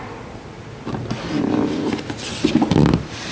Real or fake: real